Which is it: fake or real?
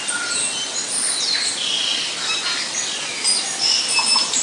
real